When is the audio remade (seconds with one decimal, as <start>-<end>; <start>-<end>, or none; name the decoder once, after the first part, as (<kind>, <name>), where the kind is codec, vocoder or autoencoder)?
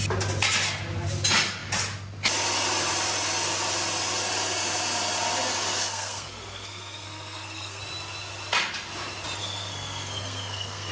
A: 5.8-7.8 (codec, SNAC); 9.4-10.9